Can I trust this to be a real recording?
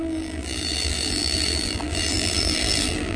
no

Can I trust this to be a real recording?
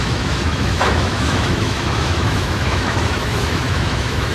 no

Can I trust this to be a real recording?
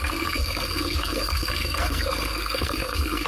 no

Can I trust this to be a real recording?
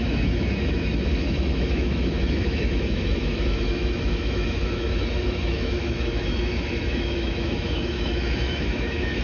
no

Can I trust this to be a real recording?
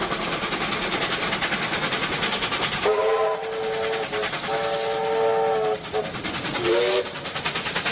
yes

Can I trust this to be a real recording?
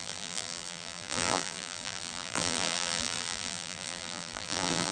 no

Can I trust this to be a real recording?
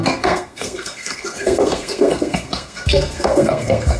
no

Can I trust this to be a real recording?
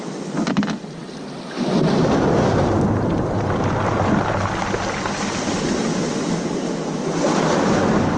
yes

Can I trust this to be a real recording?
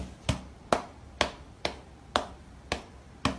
yes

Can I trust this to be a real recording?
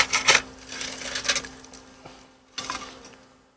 yes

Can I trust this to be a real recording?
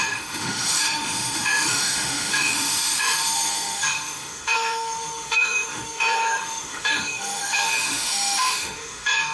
no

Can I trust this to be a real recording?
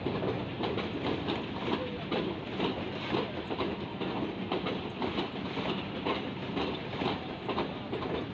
yes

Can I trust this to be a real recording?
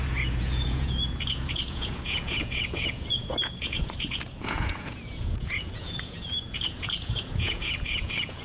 no